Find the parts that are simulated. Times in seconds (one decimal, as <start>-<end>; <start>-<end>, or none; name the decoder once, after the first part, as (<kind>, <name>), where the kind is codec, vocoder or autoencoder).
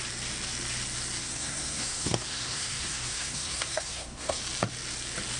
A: 1.2-4.4 (codec, SNAC)